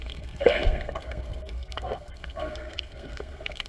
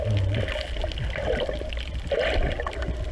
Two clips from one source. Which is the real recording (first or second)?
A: second